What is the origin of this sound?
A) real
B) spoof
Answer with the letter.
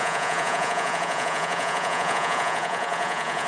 B